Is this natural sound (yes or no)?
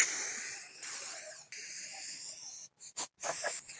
yes